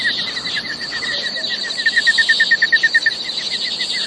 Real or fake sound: real